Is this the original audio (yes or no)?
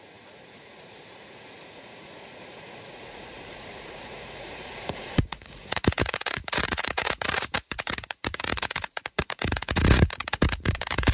no